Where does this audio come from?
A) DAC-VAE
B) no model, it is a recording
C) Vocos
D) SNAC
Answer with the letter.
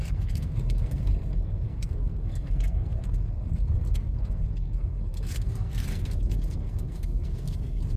D